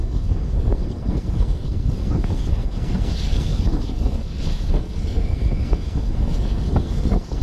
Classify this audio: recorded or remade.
remade